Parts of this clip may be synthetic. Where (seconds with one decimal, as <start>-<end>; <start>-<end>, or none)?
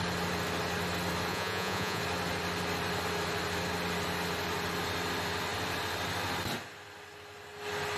1.3-2.0